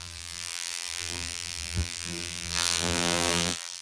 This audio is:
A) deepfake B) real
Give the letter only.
A